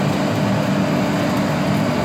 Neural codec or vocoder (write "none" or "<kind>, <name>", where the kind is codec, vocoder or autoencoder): none